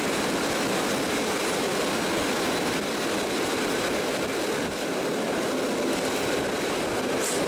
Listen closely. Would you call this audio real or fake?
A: real